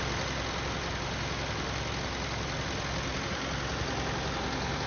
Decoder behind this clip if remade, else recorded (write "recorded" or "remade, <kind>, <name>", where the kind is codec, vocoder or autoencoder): recorded